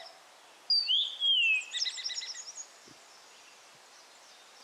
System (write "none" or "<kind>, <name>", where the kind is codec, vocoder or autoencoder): none